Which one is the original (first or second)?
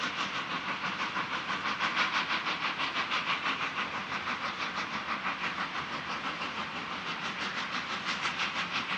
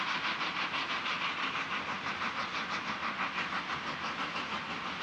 second